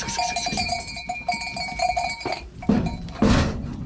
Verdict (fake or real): real